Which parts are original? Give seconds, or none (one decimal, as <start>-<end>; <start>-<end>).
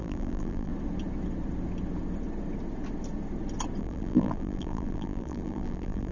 0.7-3.8